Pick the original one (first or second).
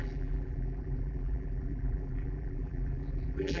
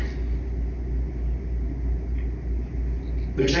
second